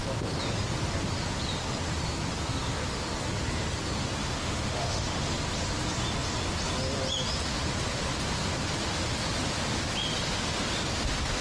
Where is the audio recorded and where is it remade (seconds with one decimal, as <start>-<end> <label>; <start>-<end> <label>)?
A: 0.0-4.2 recorded; 4.2-5.3 remade; 5.3-11.4 recorded